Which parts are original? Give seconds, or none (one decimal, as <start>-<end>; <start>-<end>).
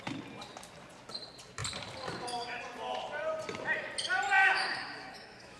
0.0-4.4